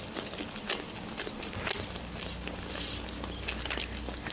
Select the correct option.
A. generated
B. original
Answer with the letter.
B